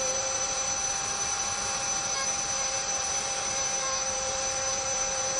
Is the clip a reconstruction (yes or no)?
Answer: yes